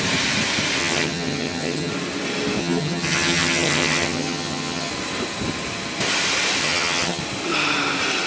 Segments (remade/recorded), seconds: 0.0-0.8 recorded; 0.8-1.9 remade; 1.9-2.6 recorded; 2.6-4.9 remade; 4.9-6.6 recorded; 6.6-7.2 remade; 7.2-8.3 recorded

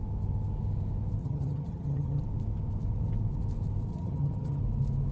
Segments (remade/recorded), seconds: 0.0-1.2 recorded; 1.2-2.2 remade; 2.2-3.9 recorded; 3.9-4.6 remade; 4.6-5.1 recorded

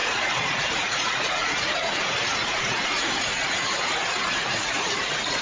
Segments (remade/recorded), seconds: 0.0-5.4 remade

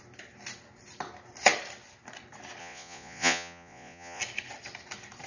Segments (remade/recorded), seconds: 0.0-2.6 recorded; 2.6-4.2 remade; 4.2-5.3 recorded

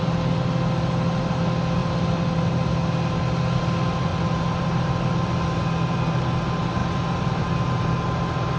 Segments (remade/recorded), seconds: 0.0-4.1 recorded; 4.1-4.9 remade; 4.9-8.6 recorded

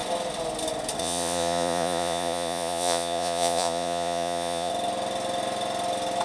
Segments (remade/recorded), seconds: 0.0-1.0 recorded; 1.0-4.7 remade; 4.7-6.2 recorded

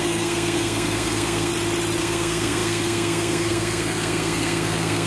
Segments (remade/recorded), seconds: 0.0-1.5 remade; 1.5-2.0 recorded; 2.0-5.1 remade

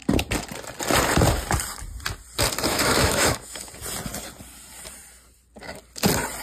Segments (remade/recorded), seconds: 0.0-2.7 recorded; 2.7-3.7 remade; 3.7-6.4 recorded